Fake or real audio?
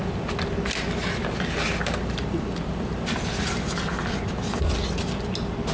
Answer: real